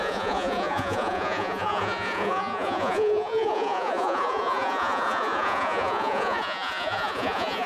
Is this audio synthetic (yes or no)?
yes